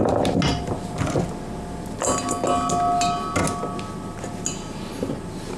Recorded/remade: recorded